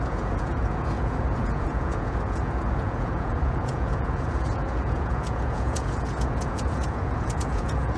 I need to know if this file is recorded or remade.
remade